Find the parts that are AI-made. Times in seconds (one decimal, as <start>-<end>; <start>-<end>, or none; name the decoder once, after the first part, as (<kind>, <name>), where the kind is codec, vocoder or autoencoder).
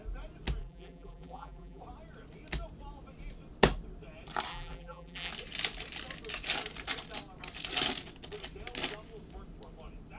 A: 0.6-1.8 (vocoder, BigVGAN v2); 4.5-5.3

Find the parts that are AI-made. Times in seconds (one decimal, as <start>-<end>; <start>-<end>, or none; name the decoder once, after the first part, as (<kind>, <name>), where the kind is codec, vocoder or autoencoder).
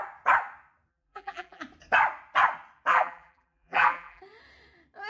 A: 0.9-1.6 (vocoder, BigVGAN v2); 2.9-4.2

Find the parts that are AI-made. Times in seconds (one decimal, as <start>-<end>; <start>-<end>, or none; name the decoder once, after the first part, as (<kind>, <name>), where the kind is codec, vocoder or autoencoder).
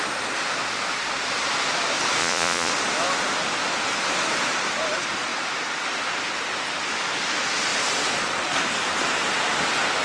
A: 2.2-2.7 (vocoder, Vocos)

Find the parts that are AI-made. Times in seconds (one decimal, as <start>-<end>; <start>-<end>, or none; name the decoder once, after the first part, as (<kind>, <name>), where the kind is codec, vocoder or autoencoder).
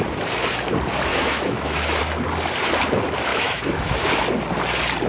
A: 1.1-2.0 (autoencoder, DAC-VAE); 3.3-4.2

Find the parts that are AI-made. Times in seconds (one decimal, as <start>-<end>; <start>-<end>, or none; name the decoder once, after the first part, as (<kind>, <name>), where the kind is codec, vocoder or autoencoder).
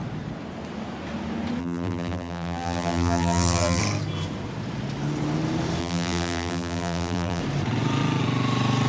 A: 1.6-3.8 (vocoder, BigVGAN v2); 5.8-7.4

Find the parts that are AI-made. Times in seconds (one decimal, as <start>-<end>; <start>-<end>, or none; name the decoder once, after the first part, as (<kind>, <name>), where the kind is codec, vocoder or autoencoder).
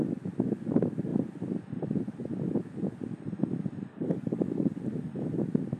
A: 3.9-4.8 (codec, DAC)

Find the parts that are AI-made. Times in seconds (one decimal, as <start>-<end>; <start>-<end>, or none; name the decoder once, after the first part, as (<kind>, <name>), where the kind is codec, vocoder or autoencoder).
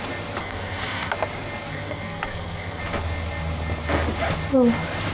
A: 0.4-1.1 (codec, SNAC); 1.7-2.8